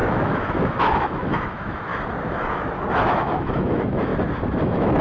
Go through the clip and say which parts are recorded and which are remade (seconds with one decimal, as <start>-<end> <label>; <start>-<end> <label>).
0.0-1.9 remade; 1.9-2.5 recorded; 2.5-4.1 remade; 4.1-4.6 recorded; 4.6-5.0 remade